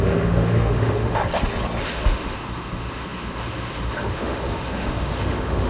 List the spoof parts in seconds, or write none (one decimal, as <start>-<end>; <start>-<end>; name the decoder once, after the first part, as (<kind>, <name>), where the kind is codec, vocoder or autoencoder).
0.0-1.2 (autoencoder, DAC-VAE); 1.8-5.7